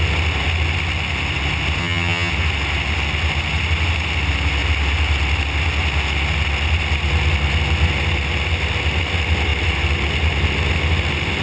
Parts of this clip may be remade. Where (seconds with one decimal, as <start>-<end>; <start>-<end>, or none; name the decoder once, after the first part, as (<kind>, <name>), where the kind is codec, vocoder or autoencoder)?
1.8-2.3 (vocoder, HiFi-GAN)